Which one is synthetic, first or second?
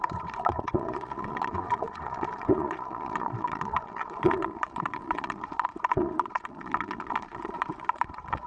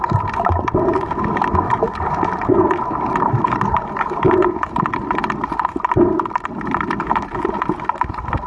first